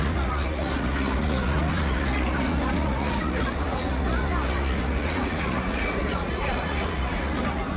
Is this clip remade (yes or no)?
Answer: yes